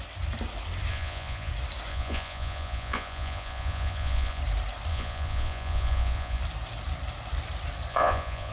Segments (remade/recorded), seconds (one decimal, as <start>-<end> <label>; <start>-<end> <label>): 0.0-0.9 recorded; 0.9-1.5 remade; 1.5-1.9 recorded; 1.9-4.4 remade; 4.4-4.9 recorded; 4.9-6.4 remade; 6.4-7.9 recorded; 7.9-8.5 remade